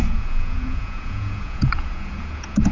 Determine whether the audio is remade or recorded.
remade